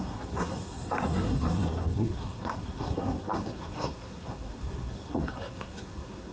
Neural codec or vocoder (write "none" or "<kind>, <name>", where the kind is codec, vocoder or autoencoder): codec, SNAC